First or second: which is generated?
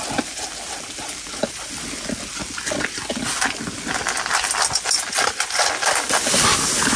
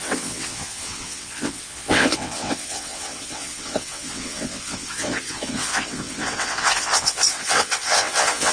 second